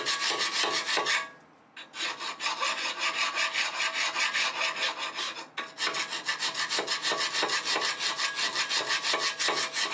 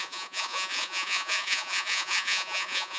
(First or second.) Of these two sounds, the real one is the first